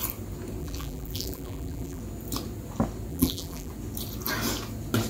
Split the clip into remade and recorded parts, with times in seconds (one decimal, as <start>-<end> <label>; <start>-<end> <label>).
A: 0.0-0.6 recorded; 0.6-2.0 remade; 2.0-3.1 recorded; 3.1-3.7 remade; 3.7-5.1 recorded